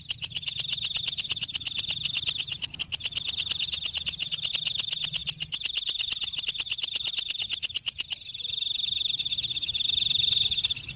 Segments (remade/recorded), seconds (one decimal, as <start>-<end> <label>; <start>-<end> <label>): 0.0-11.0 recorded